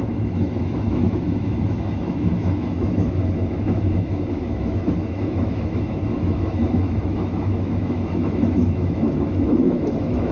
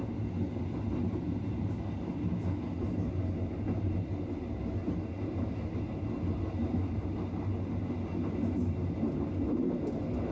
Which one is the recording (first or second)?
second